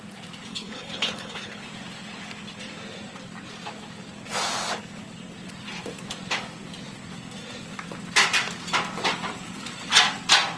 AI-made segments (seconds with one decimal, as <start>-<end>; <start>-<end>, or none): 0.5-1.7